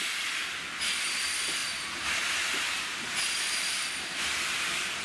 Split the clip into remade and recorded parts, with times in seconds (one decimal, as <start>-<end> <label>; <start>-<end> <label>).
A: 0.0-5.0 recorded